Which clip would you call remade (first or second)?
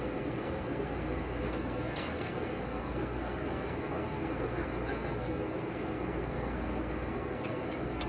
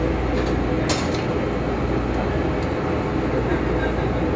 first